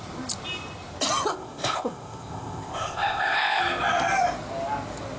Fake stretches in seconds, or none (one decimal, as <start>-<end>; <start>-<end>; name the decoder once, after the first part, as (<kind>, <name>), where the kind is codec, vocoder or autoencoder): 1.3-3.6 (codec, ZipCodec)